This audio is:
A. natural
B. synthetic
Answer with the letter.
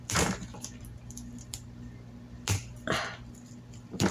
B